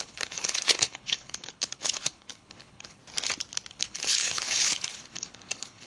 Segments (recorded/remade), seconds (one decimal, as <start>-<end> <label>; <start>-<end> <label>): 0.0-3.0 remade; 3.0-3.7 recorded; 3.7-5.9 remade